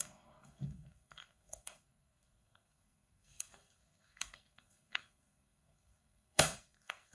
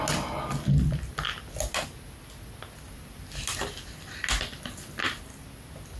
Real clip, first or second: second